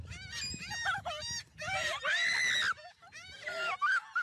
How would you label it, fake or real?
real